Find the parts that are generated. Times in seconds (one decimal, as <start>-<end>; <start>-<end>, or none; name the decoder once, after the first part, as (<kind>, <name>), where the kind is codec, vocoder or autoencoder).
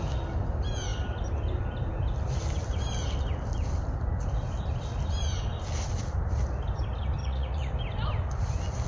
7.2-7.7 (vocoder, Vocos)